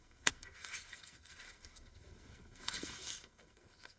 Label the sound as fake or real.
fake